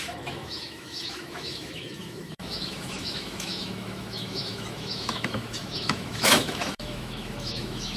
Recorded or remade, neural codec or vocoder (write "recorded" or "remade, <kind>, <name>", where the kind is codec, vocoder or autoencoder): remade, autoencoder, DAC-VAE